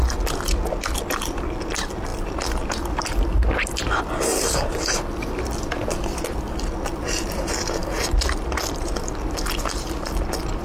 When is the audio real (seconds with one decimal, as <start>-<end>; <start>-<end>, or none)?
0.0-10.6